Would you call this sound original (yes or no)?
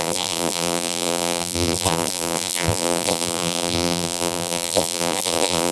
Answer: no